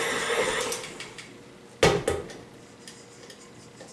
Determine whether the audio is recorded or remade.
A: recorded